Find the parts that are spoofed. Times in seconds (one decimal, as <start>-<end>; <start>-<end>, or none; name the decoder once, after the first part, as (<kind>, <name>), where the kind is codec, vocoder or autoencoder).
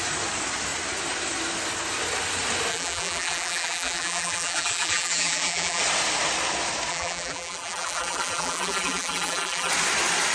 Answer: 2.7-5.8 (vocoder, BigVGAN v2); 6.9-9.7